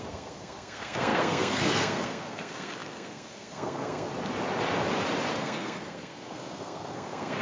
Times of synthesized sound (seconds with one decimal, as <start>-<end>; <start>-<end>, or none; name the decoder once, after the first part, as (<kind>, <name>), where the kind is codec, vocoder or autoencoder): 0.0-4.1 (codec, SNAC); 5.3-7.4